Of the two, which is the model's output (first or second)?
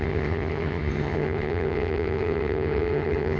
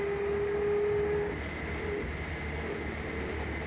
first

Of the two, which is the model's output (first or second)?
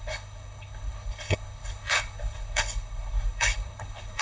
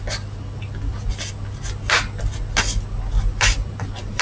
first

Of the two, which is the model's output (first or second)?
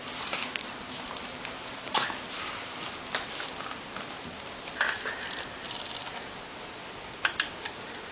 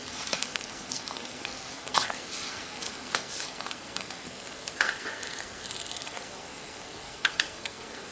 second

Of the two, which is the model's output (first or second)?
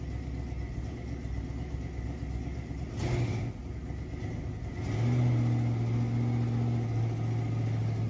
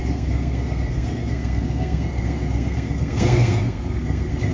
second